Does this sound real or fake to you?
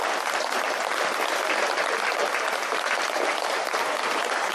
real